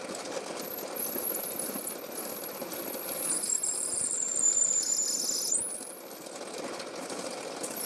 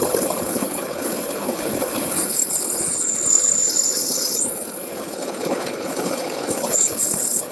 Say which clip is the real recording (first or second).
first